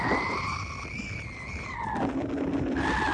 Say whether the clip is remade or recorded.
recorded